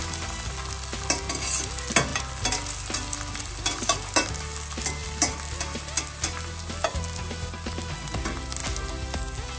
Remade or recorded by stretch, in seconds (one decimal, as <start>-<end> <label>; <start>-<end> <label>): 0.0-9.6 recorded